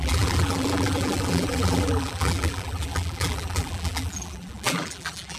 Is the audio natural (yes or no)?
no